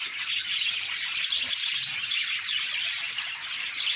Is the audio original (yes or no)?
yes